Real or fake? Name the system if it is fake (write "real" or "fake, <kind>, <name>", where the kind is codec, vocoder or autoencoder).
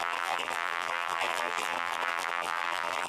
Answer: fake, vocoder, BigVGAN v2